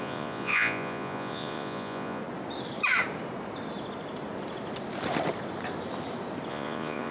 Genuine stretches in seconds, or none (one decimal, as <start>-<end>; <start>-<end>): 2.2-6.5